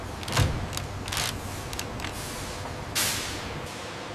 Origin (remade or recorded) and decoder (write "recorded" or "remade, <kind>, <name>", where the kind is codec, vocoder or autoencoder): recorded